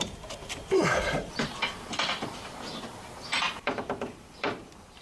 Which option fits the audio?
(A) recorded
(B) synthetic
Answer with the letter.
B